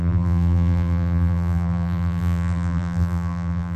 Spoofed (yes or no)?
yes